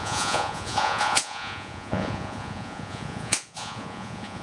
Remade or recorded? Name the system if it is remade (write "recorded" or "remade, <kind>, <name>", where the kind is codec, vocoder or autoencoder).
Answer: remade, vocoder, Vocos